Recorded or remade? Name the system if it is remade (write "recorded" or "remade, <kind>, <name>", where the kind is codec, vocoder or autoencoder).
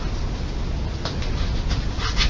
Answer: recorded